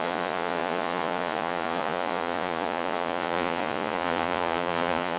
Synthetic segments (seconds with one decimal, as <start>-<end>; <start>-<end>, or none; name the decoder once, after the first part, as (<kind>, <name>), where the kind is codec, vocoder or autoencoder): 0.0-5.2 (vocoder, Vocos)